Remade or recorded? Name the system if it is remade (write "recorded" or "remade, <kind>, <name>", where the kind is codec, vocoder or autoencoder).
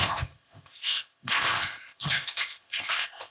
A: remade, codec, ZipCodec